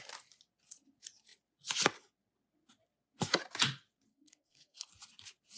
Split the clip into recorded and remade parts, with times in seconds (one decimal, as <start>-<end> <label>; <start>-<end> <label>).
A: 0.0-4.1 recorded; 4.1-4.9 remade; 4.9-5.6 recorded